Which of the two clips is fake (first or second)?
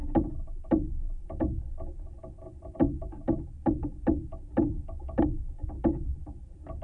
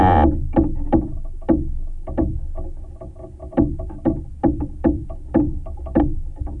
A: first